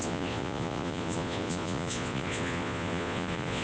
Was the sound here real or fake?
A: fake